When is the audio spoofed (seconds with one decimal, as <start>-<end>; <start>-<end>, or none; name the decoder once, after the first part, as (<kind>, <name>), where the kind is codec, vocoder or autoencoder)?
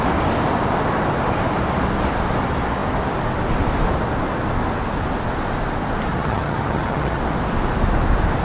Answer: 6.1-7.2 (vocoder, HiFi-GAN)